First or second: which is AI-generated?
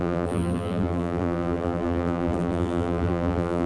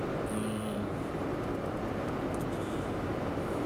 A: first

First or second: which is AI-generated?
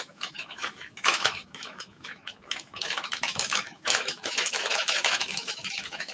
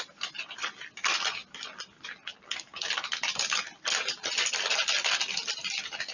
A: first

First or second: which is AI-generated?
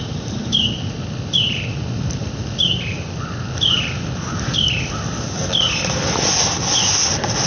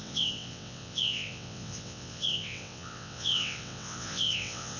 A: second